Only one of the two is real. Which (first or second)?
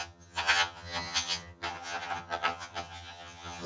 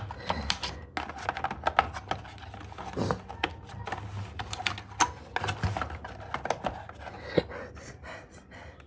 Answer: second